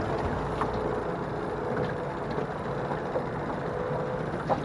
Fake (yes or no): no